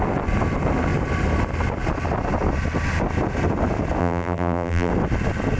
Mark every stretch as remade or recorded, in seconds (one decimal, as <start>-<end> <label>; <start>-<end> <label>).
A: 0.0-4.0 recorded; 4.0-4.9 remade; 4.9-5.6 recorded

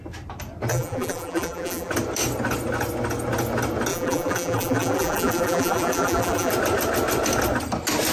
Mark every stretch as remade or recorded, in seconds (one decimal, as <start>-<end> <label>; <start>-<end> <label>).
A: 0.0-0.7 recorded; 0.7-1.9 remade; 1.9-3.9 recorded; 3.9-6.5 remade; 6.5-8.1 recorded